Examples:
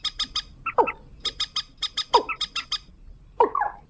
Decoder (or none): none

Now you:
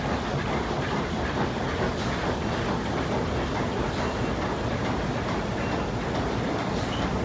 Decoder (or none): none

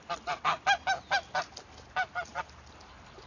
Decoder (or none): none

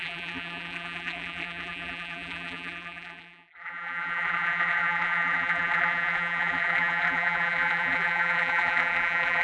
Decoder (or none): vocoder, BigVGAN v2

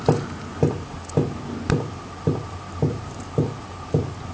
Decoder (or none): none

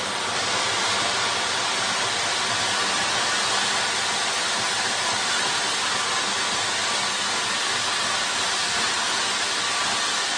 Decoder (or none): none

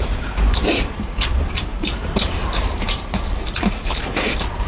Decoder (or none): vocoder, BigVGAN v2